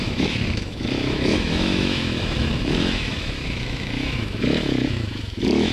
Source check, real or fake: fake